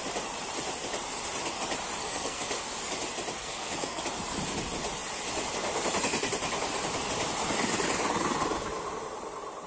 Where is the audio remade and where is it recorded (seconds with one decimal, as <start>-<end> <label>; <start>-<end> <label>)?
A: 0.0-2.0 recorded; 2.0-2.6 remade; 2.6-3.4 recorded; 3.4-4.0 remade; 4.0-9.7 recorded